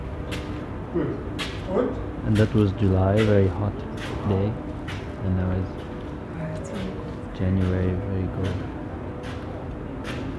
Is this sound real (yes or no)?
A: yes